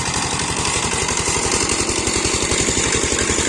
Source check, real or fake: real